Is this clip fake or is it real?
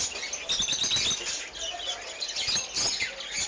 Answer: real